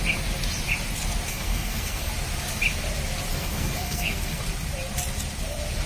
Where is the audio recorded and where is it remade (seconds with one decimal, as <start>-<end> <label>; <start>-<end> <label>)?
0.0-1.3 recorded; 1.3-2.1 remade; 2.1-3.3 recorded; 3.3-4.4 remade; 4.4-5.9 recorded